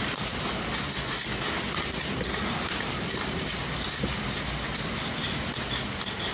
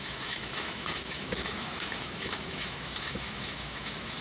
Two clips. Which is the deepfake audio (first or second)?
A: second